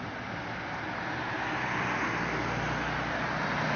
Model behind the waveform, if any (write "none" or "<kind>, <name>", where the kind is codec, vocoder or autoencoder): none